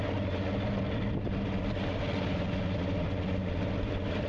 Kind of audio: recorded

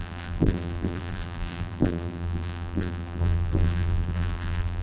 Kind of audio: remade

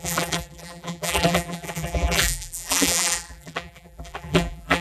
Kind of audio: remade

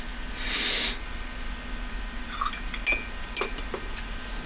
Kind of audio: recorded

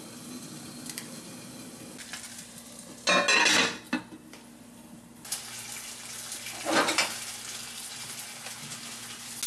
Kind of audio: recorded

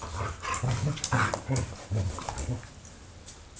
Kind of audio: recorded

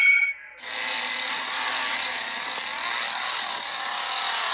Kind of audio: recorded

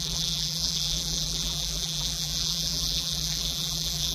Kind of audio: remade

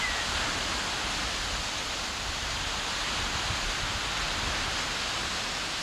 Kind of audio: recorded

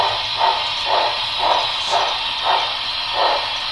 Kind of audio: remade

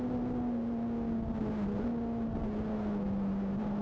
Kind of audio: recorded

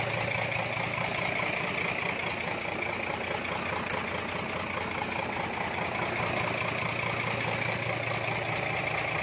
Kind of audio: recorded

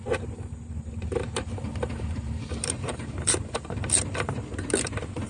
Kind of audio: remade